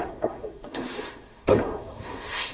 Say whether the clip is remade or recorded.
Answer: remade